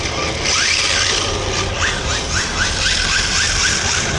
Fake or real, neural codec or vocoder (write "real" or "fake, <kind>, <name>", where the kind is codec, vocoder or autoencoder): fake, vocoder, BigVGAN v2